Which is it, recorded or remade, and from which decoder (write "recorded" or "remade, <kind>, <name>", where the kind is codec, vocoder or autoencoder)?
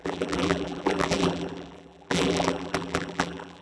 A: remade, vocoder, BigVGAN v2